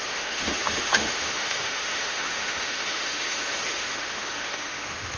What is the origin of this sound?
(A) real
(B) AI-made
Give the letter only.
B